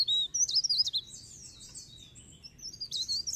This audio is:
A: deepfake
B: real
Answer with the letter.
B